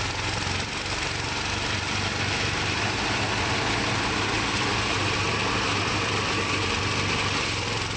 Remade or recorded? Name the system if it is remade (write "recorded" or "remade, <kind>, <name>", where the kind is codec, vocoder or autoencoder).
recorded